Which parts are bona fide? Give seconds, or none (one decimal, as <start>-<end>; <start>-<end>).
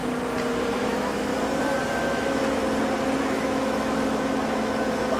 0.0-0.7; 1.3-1.9; 2.6-3.2